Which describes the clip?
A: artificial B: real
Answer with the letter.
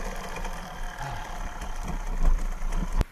B